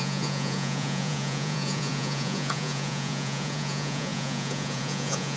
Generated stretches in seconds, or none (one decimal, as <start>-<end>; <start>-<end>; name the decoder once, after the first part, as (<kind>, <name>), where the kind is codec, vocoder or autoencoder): 0.0-5.4 (vocoder, Vocos)